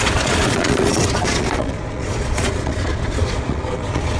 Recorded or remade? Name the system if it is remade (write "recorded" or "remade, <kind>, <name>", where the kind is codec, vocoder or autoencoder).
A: remade, vocoder, Vocos